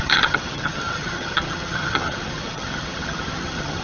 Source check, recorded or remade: remade